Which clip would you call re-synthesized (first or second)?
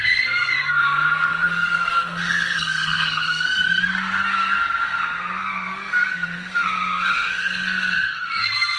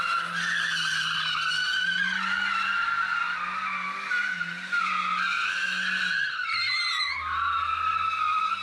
first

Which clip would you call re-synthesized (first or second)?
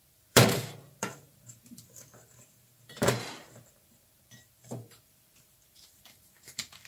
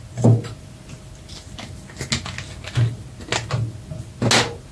first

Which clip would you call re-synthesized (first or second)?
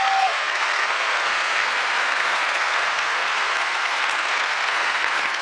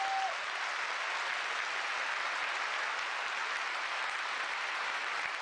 first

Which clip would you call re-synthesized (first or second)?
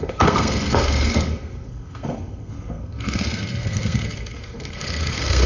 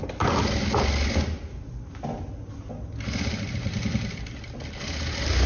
first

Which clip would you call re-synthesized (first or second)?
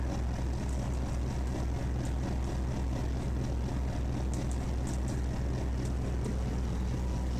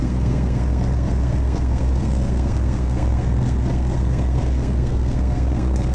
second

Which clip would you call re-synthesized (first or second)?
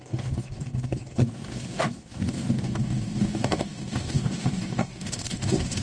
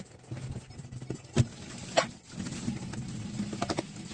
first